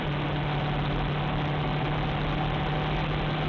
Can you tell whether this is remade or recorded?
recorded